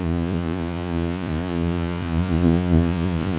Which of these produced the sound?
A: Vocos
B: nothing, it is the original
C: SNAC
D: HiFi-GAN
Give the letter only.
A